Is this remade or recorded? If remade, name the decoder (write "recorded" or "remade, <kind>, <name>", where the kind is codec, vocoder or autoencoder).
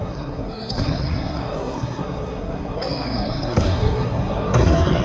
remade, codec, SNAC